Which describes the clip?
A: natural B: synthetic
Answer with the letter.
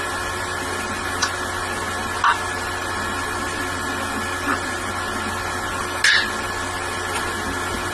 A